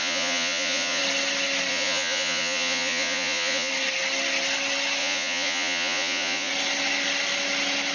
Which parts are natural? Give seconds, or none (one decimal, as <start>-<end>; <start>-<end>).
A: 1.0-1.7; 3.7-5.0; 6.5-7.9